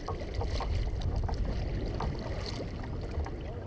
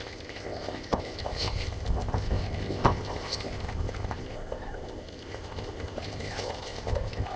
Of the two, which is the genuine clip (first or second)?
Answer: first